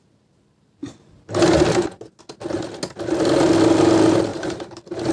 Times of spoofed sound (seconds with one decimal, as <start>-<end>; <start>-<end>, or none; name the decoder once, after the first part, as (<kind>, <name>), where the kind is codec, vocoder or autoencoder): 0.8-2.2 (vocoder, BigVGAN v2); 4.3-5.1